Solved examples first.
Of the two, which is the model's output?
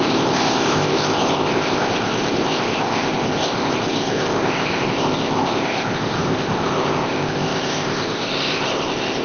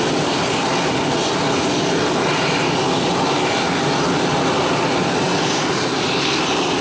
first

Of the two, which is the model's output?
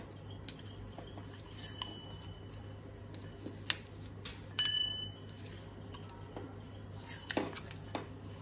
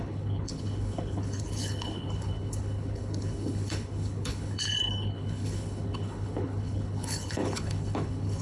second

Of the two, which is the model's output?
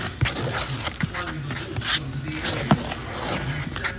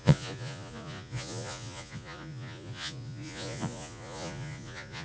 second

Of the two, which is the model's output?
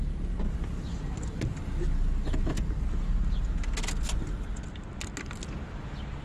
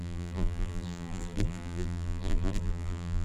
second